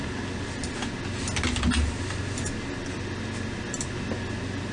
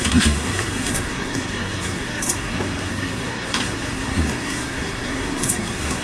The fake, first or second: second